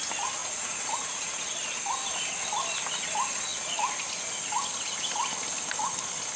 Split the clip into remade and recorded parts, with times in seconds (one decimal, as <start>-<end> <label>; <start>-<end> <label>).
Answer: 0.0-0.4 recorded; 0.4-1.5 remade; 1.5-6.4 recorded